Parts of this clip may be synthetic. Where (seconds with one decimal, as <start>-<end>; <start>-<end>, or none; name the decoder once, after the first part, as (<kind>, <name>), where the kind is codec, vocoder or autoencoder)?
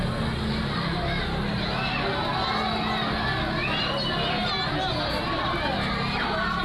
none